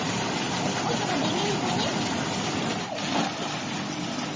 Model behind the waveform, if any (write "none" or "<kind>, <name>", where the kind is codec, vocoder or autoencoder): none